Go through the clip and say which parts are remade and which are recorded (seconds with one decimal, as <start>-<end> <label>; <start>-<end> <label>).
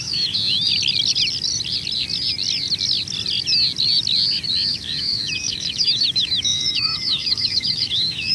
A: 0.0-0.7 remade; 0.7-4.7 recorded; 4.7-8.3 remade